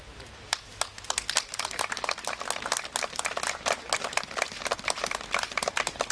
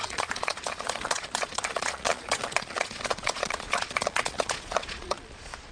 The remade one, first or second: second